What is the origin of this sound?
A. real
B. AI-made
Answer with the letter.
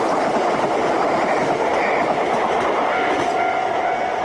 A